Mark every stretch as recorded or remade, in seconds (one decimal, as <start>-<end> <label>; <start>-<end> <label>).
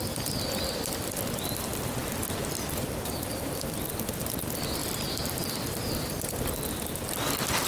0.0-2.0 recorded; 2.0-3.6 remade; 3.6-4.8 recorded; 4.8-6.4 remade; 6.4-7.7 recorded